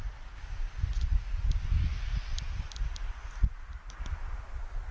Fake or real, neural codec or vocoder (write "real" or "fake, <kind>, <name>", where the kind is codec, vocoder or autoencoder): real